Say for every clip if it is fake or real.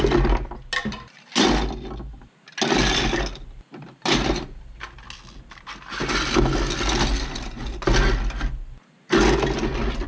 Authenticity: real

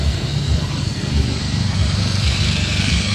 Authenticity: fake